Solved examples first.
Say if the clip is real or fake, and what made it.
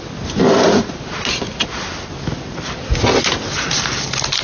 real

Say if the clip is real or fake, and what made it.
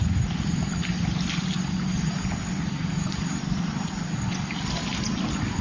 real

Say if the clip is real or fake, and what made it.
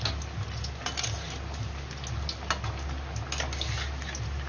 real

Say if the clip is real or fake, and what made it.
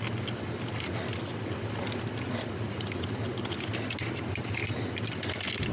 real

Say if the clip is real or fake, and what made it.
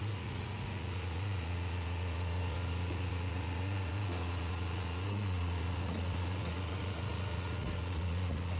fake, vocoder, Vocos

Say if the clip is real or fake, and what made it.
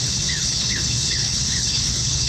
fake, codec, HILCodec